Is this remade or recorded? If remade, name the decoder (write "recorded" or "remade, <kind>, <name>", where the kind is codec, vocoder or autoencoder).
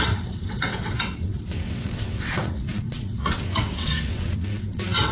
remade, vocoder, WaveNeXt